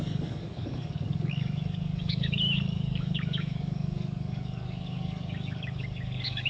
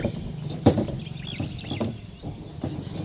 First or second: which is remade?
first